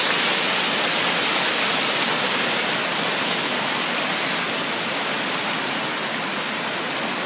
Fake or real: real